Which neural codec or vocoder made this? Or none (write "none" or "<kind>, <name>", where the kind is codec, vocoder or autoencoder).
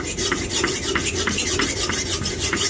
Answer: none